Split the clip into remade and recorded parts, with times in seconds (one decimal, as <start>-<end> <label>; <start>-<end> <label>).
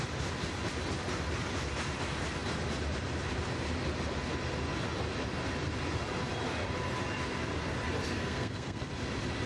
0.0-8.2 recorded; 8.2-8.9 remade; 8.9-9.5 recorded